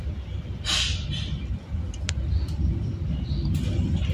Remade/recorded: recorded